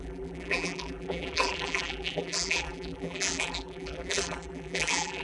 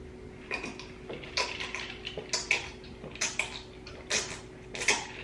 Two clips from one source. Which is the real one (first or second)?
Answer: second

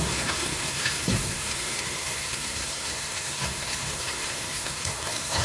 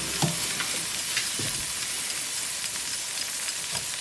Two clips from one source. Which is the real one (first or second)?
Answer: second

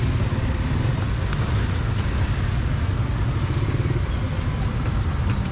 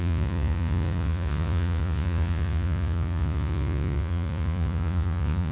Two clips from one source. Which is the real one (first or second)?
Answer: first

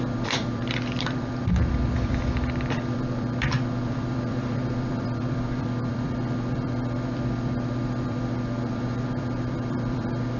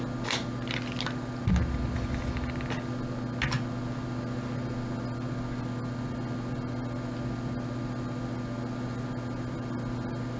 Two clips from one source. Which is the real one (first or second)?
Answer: second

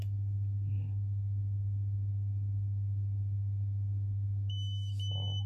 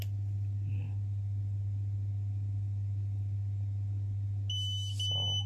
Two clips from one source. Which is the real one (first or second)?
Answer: second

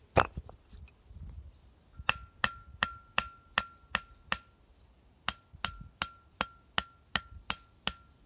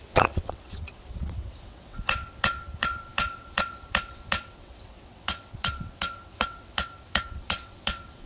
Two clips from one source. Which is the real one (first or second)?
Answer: first